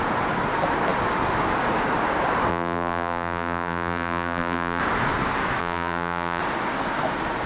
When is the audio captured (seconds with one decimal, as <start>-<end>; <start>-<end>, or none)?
0.0-2.5; 4.8-5.6; 6.4-7.5